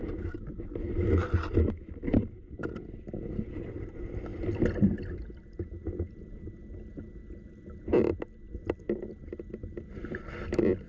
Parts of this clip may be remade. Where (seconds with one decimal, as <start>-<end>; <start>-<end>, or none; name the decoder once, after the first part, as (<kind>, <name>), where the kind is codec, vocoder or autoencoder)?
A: none